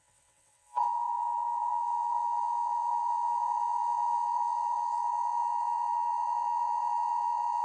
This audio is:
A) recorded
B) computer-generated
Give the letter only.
B